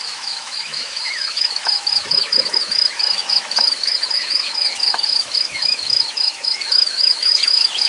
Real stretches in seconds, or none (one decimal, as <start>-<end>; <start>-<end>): none